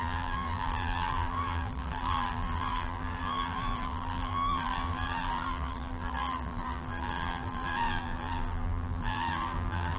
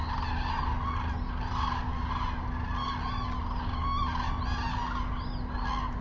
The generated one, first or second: first